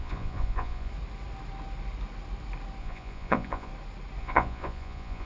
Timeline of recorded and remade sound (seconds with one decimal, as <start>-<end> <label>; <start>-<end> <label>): 0.0-0.9 remade; 0.9-2.8 recorded; 2.8-3.7 remade; 3.7-4.2 recorded; 4.2-5.3 remade